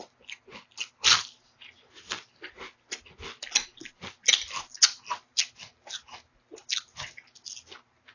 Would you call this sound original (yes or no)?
yes